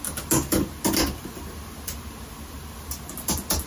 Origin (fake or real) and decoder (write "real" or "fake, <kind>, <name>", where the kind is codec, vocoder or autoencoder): real